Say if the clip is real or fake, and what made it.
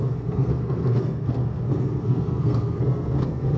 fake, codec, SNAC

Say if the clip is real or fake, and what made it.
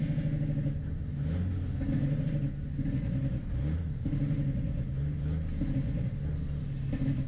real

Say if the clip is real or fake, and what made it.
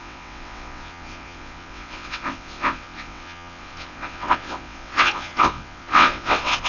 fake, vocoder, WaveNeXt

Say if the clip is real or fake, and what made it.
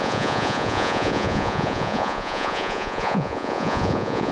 fake, vocoder, Vocos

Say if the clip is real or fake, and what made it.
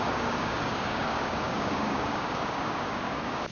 fake, codec, DAC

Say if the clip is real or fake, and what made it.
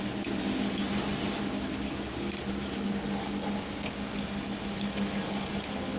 real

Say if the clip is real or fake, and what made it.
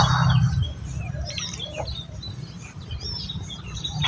real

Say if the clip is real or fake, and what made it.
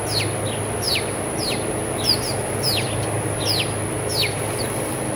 real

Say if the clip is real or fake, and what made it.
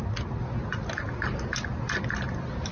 real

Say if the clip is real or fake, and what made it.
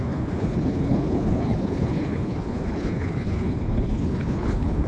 fake, codec, HILCodec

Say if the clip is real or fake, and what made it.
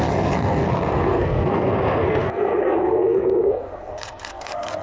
fake, codec, SNAC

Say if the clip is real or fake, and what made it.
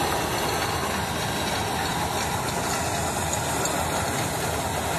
real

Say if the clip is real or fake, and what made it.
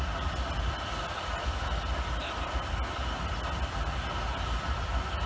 real